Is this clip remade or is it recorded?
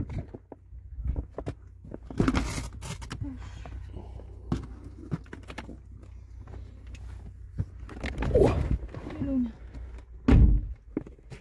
recorded